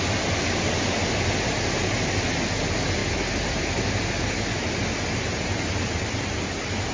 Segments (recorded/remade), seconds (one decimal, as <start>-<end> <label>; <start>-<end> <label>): 0.0-6.9 recorded

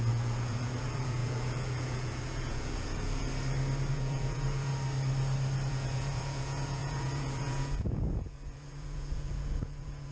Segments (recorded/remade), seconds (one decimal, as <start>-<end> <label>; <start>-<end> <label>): 0.0-3.3 remade; 3.3-3.9 recorded; 3.9-4.7 remade; 4.7-5.7 recorded; 5.7-10.1 remade

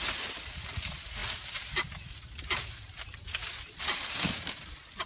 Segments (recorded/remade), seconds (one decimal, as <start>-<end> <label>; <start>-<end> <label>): 0.0-5.1 recorded

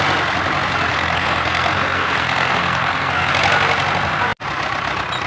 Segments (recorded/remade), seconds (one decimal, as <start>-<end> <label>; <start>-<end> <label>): 0.0-0.9 recorded; 0.9-3.3 remade; 3.3-5.3 recorded

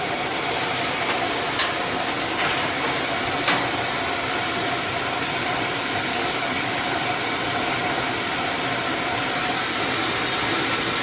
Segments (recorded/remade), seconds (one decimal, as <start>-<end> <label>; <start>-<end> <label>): 0.0-6.1 recorded; 6.1-7.2 remade; 7.2-11.0 recorded